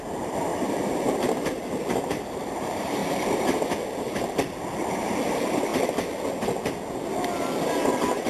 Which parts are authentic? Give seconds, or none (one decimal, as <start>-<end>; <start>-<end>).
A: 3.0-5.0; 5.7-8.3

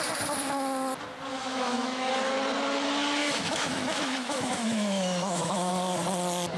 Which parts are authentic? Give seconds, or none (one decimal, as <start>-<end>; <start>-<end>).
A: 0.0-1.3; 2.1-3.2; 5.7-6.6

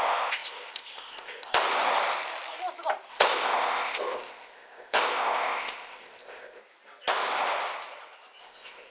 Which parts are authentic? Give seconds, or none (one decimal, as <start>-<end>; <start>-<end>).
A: 1.5-3.1; 6.6-8.4